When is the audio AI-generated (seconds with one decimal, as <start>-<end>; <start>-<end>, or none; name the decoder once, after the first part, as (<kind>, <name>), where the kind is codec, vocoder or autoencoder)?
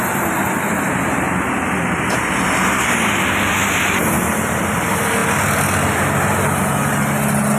none